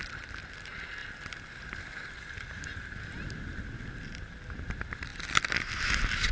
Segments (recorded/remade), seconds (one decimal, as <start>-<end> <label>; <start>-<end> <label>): 0.0-6.3 recorded